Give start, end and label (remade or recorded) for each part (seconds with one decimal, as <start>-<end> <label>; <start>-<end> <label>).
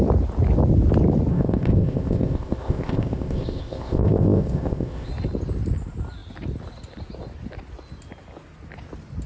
0.0-1.3 recorded; 1.3-5.1 remade; 5.1-9.3 recorded